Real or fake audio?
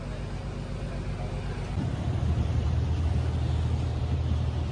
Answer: real